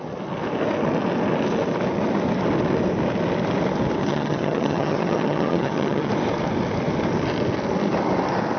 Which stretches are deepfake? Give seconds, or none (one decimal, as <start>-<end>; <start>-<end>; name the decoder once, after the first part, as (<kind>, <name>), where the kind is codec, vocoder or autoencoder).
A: 4.0-6.1 (vocoder, HiFi-GAN)